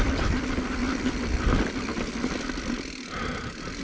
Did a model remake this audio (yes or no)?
yes